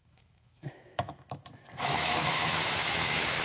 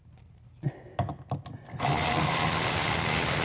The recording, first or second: second